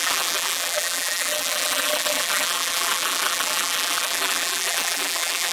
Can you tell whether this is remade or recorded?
remade